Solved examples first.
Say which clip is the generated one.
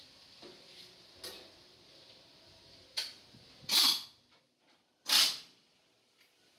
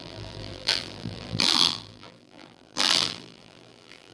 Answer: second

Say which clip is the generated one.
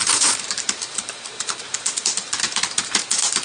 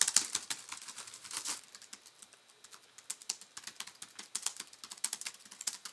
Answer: first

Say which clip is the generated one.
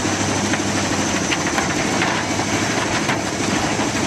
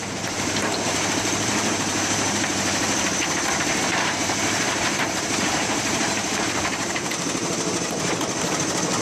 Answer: second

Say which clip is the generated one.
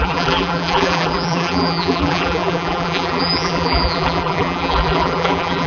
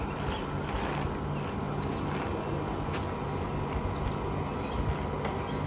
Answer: first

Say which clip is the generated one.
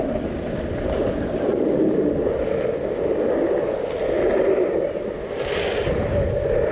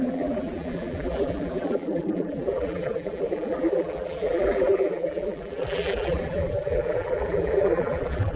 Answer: second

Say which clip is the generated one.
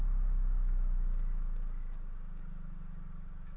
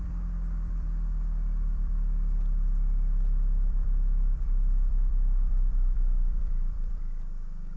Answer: second